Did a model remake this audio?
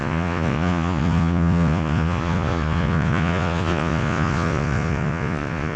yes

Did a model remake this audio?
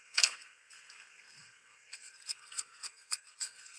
yes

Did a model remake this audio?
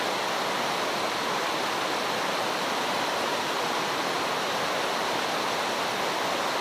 no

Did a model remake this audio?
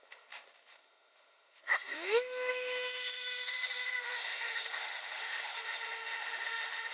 yes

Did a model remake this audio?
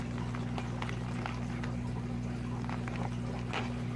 no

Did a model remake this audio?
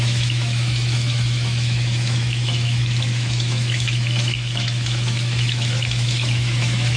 yes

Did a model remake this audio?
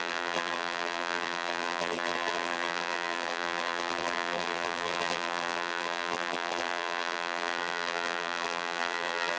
yes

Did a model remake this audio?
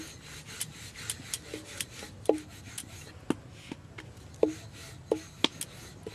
no